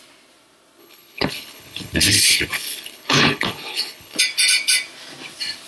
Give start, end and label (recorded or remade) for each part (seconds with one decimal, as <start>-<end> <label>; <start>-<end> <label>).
0.0-0.8 recorded; 0.8-4.2 remade; 4.2-5.7 recorded